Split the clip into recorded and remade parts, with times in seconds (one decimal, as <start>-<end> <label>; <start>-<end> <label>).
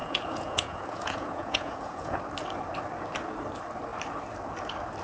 0.0-2.2 remade; 2.2-5.0 recorded